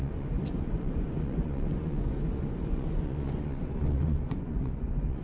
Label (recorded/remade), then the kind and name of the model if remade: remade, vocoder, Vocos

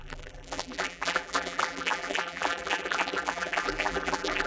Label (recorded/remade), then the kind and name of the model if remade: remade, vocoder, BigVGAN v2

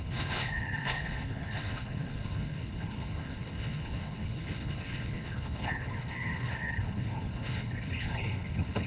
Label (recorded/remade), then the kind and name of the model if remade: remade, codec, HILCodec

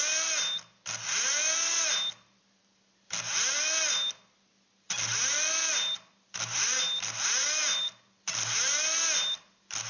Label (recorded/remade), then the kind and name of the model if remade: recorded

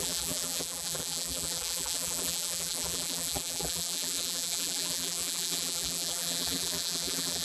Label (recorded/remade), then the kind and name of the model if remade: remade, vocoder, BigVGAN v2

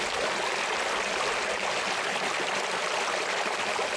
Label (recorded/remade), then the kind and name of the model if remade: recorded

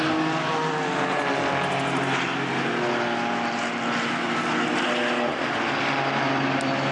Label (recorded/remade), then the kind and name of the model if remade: recorded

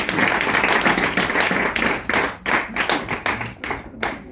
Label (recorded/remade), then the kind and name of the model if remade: recorded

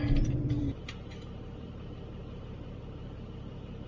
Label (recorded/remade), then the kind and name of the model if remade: remade, vocoder, BigVGAN v2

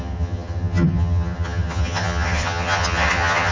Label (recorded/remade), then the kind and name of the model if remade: remade, vocoder, HiFi-GAN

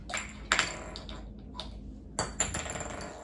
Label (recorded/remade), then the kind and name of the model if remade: recorded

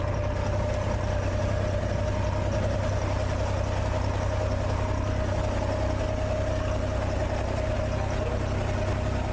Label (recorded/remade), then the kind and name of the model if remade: recorded